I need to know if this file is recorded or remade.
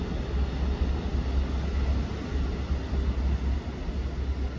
recorded